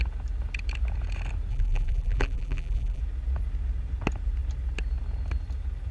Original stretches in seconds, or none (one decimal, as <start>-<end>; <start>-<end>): 0.0-1.5; 3.0-5.9